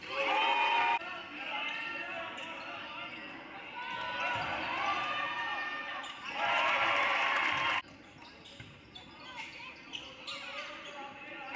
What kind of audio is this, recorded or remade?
recorded